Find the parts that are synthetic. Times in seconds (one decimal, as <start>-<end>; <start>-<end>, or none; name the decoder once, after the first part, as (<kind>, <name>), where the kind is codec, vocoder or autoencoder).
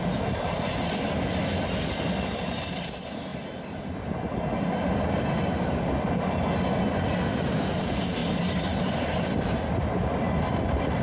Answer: 8.2-8.8 (vocoder, BigVGAN v2)